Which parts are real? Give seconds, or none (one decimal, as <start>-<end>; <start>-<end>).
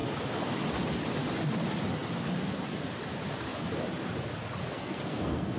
0.0-4.6